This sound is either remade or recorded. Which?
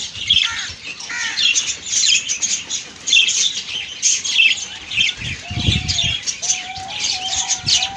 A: recorded